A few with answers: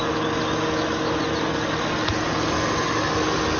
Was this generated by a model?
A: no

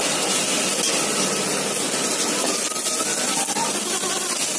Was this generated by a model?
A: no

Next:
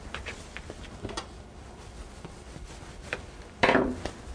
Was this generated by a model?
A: no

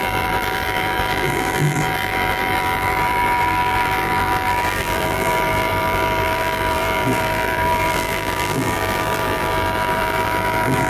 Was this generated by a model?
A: yes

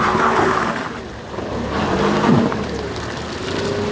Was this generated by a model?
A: no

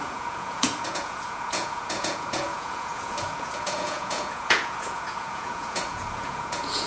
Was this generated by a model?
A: yes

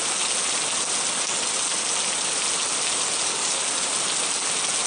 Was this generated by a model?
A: no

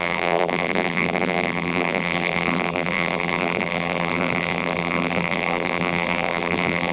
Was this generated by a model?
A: yes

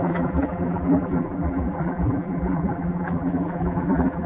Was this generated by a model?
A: yes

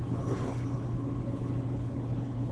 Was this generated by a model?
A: yes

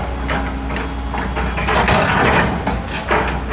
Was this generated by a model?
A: no